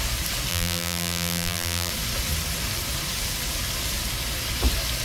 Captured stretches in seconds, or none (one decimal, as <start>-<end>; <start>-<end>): 0.0-0.5; 1.9-5.0